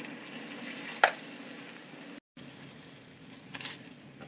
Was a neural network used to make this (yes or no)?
no